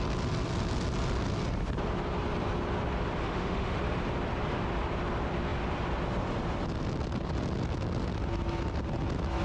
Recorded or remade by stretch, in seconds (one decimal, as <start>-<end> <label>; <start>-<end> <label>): 0.0-3.2 recorded; 3.2-3.8 remade; 3.8-9.4 recorded